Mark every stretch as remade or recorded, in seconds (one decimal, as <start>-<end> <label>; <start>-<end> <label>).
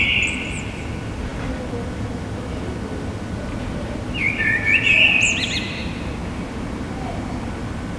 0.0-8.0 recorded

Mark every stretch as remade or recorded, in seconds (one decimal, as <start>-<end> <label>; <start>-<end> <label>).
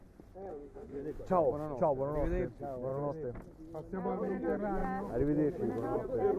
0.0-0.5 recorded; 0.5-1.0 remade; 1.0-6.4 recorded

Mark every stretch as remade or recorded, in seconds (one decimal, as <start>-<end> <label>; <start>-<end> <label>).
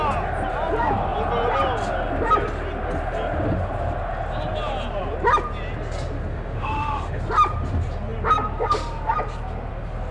0.0-6.3 recorded; 6.3-7.2 remade; 7.2-10.1 recorded